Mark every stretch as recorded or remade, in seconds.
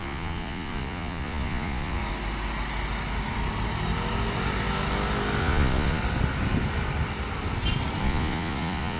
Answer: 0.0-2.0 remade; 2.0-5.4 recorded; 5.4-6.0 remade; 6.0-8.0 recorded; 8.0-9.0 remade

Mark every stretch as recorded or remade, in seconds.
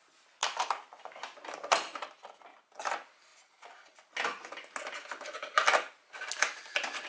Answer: 0.0-7.1 recorded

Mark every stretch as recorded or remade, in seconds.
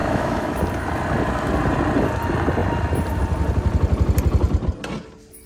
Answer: 0.0-0.6 remade; 0.6-5.5 recorded